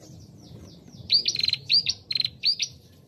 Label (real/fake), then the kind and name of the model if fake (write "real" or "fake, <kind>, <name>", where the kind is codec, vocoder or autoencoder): fake, vocoder, BigVGAN v2